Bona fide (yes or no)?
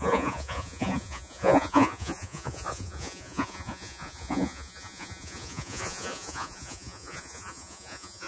no